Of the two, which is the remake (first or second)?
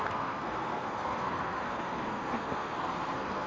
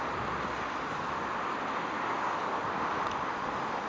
first